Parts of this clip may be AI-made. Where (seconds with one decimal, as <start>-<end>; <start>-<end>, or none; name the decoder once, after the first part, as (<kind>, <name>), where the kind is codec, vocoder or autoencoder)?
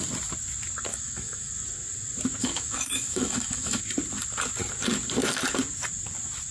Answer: 0.9-1.5 (autoencoder, DAC-VAE); 2.4-3.8